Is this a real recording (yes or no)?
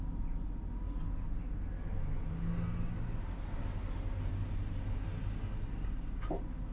yes